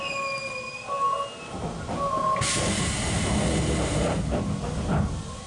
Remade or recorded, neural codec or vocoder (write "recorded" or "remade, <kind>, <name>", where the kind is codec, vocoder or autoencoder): recorded